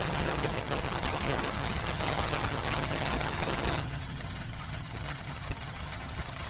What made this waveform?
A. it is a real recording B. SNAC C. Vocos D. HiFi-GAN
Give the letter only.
D